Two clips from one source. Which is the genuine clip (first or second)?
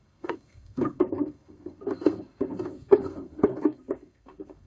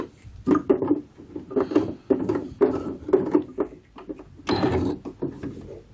second